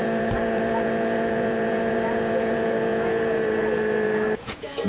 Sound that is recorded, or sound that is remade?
remade